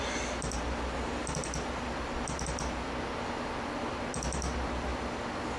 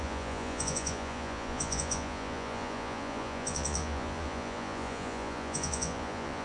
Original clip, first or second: first